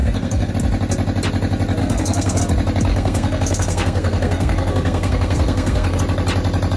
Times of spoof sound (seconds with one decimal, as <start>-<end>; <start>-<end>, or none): 0.0-0.5; 1.8-2.4; 2.9-6.0